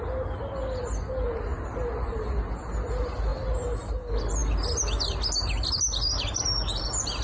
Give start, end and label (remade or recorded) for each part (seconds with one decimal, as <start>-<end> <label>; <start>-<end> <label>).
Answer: 0.0-7.2 recorded